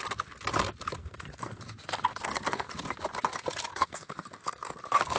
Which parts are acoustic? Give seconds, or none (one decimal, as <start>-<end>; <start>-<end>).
0.0-1.0; 1.6-2.1; 2.7-3.7; 4.8-5.2